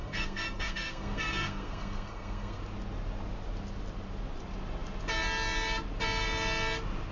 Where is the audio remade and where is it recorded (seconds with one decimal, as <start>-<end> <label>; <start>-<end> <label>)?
0.0-2.6 remade; 2.6-7.1 recorded